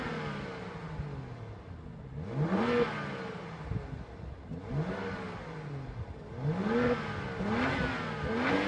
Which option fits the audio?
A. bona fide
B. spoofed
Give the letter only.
A